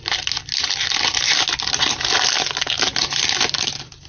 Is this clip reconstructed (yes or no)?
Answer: no